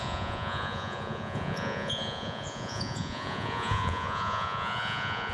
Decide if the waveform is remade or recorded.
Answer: remade